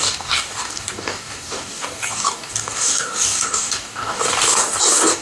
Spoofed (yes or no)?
yes